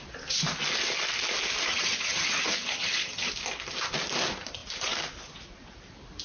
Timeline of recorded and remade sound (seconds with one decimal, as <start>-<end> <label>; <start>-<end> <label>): 0.0-1.7 recorded; 1.7-3.3 remade; 3.3-6.2 recorded